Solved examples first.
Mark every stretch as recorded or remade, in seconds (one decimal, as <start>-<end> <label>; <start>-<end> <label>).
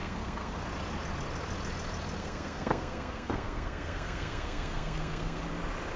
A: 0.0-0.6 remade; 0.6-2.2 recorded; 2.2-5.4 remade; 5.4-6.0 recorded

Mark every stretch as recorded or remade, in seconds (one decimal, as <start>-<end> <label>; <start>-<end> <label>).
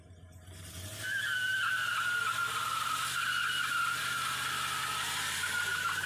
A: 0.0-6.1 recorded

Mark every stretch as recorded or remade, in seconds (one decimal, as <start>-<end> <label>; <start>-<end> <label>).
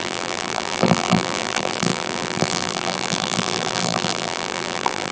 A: 0.0-5.1 remade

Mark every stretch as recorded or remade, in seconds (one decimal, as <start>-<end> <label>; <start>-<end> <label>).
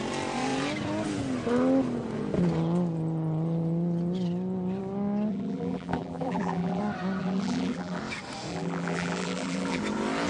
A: 0.0-5.3 recorded; 5.3-6.8 remade; 6.8-7.2 recorded; 7.2-8.0 remade; 8.0-8.5 recorded; 8.5-9.8 remade; 9.8-10.3 recorded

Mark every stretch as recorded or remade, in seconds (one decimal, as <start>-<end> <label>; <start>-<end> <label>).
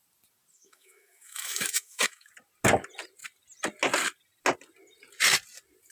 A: 0.0-0.5 recorded; 0.5-2.3 remade; 2.3-5.9 recorded